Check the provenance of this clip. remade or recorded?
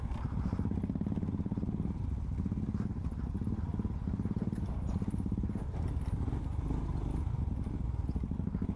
recorded